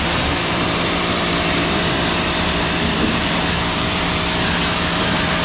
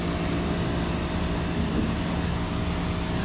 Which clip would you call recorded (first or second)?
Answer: second